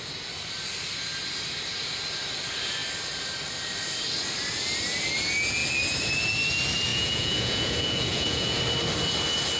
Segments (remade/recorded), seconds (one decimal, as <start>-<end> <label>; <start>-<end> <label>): 0.0-6.9 recorded; 6.9-8.6 remade; 8.6-9.6 recorded